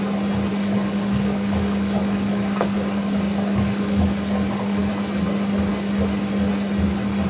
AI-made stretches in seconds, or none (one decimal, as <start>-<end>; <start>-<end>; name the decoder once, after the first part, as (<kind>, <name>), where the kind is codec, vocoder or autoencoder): 0.5-4.9 (codec, DAC)